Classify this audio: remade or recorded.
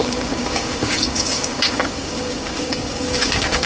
remade